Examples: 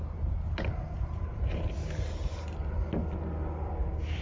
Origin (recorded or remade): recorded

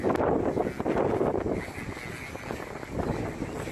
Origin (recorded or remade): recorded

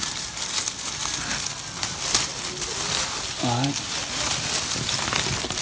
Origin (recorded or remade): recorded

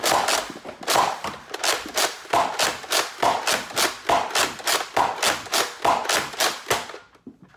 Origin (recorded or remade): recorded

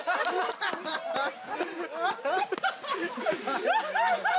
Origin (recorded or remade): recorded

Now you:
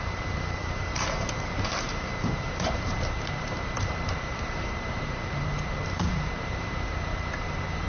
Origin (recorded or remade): remade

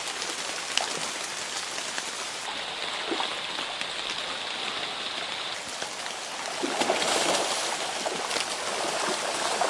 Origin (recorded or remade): recorded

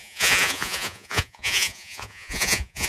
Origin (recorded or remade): remade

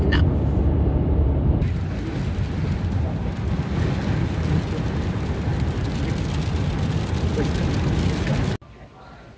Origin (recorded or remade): recorded